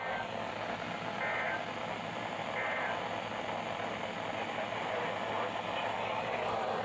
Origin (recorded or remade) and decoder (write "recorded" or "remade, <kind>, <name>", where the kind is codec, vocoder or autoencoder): recorded